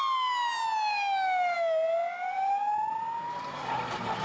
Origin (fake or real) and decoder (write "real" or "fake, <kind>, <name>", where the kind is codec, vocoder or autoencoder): real